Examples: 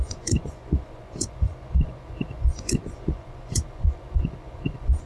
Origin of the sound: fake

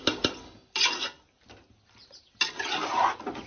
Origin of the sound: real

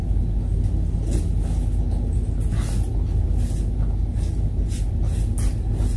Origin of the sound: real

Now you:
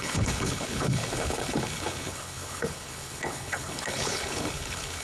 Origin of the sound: fake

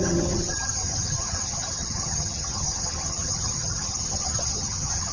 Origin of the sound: fake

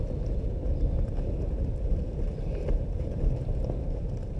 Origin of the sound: real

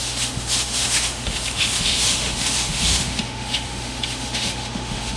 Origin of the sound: fake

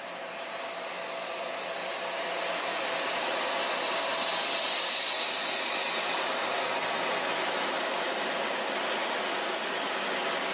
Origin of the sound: real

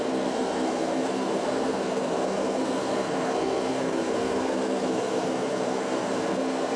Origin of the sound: fake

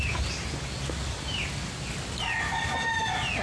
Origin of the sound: real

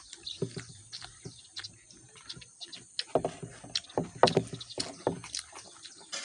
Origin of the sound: real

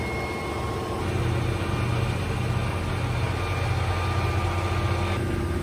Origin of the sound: real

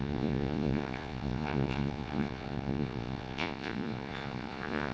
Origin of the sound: fake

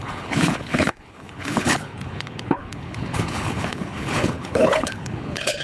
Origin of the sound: fake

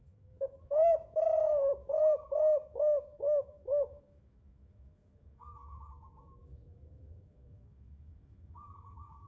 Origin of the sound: fake